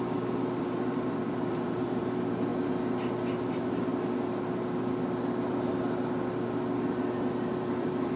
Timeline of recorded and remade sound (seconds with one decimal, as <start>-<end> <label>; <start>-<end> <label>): 0.0-2.5 remade; 2.5-3.5 recorded; 3.5-3.9 remade; 3.9-7.5 recorded; 7.5-8.2 remade